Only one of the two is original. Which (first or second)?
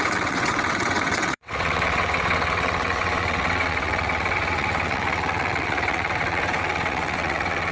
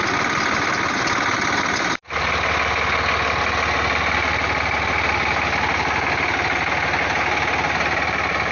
second